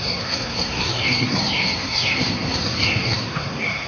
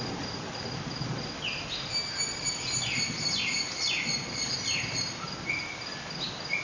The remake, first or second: first